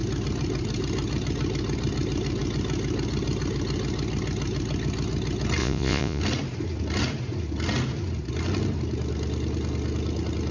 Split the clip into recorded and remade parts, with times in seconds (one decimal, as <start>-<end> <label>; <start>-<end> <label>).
0.0-5.6 recorded; 5.6-6.2 remade; 6.2-10.5 recorded